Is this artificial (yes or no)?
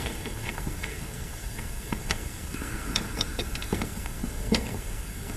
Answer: yes